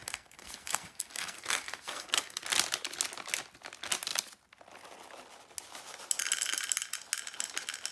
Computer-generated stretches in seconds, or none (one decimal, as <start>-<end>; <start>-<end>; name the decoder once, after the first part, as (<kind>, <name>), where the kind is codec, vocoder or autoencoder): 0.0-2.4 (codec, SNAC)